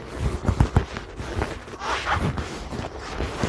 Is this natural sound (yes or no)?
yes